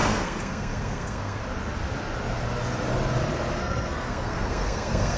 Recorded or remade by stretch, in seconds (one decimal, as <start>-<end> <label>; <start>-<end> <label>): 0.0-1.4 remade; 1.4-3.6 recorded; 3.6-5.2 remade